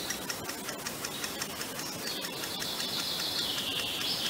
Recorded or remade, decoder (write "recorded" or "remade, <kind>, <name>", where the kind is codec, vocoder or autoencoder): recorded